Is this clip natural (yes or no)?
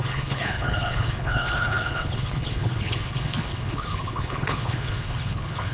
no